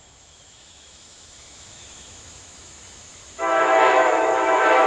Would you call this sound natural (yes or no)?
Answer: no